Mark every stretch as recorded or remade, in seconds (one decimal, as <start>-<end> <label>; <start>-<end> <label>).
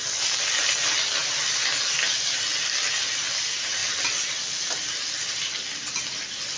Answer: 0.0-6.6 recorded